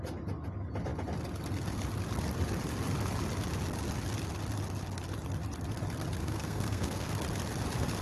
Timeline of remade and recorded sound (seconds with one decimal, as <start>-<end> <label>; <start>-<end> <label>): 0.0-6.2 recorded; 6.2-7.1 remade; 7.1-8.0 recorded

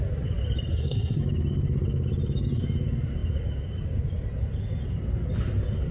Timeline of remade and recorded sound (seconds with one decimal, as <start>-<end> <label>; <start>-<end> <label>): 0.0-0.7 recorded; 0.7-1.2 remade; 1.2-5.9 recorded

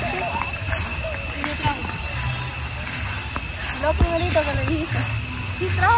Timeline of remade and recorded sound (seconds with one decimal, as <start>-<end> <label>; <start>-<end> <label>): 0.0-6.0 recorded

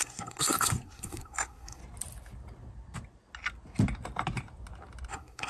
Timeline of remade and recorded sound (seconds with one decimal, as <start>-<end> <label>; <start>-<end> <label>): 0.0-1.8 remade; 1.8-5.1 recorded; 5.1-5.5 remade

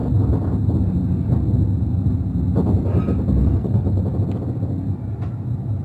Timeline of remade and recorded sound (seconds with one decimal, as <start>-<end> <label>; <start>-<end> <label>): 0.0-3.4 recorded; 3.4-4.0 remade; 4.0-5.8 recorded

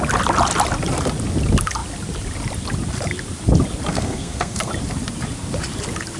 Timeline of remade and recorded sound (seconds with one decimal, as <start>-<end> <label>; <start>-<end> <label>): 0.0-3.9 recorded; 3.9-4.7 remade; 4.7-6.2 recorded

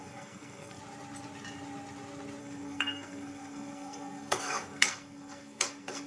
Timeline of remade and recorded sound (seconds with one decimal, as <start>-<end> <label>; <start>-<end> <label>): 0.0-0.8 remade; 0.8-2.4 recorded; 2.4-6.1 remade